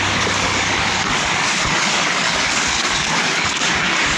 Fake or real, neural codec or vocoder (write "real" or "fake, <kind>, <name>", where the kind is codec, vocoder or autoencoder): fake, codec, DAC